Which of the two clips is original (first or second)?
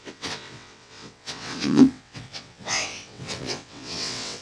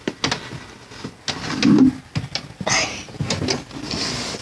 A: second